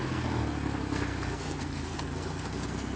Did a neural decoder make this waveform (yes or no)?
yes